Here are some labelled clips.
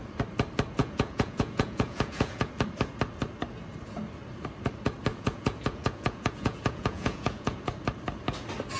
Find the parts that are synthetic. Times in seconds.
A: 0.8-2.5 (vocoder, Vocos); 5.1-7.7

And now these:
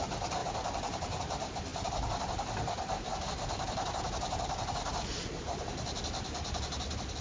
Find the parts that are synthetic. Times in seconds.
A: none

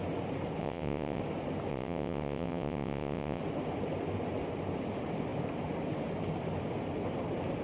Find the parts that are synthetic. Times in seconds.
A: 0.6-1.2 (vocoder, WaveNeXt); 1.7-3.4

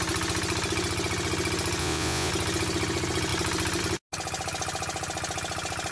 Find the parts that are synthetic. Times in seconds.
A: 1.8-2.3 (vocoder, Vocos)

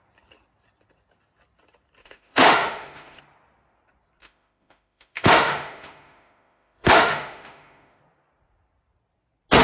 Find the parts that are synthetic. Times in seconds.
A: 2.0-3.2 (autoencoder, DAC-VAE); 4.2-8.0

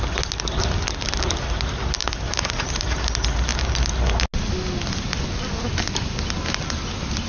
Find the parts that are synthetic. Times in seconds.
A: 2.0-3.1 (vocoder, BigVGAN v2)

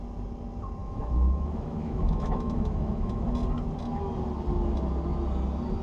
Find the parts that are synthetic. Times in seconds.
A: 0.8-3.2 (autoencoder, DAC-VAE)